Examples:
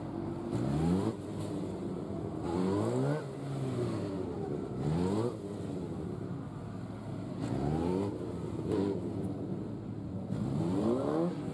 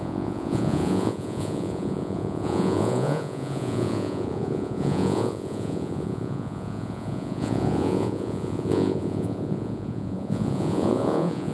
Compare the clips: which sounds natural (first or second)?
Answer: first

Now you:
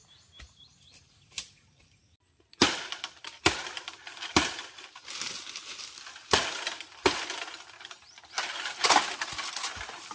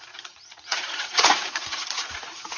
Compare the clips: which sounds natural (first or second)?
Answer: first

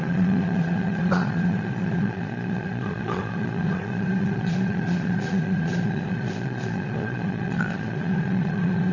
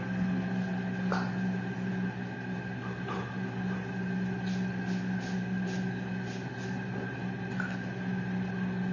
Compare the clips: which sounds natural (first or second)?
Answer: second